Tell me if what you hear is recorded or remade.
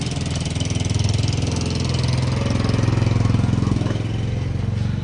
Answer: recorded